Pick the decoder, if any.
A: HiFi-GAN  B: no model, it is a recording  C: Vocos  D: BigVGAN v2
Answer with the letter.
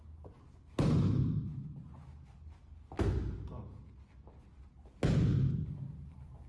B